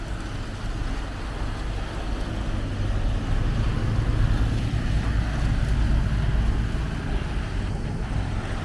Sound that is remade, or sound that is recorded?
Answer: recorded